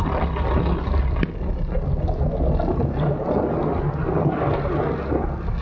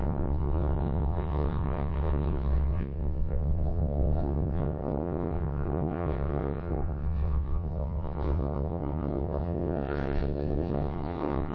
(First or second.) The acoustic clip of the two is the first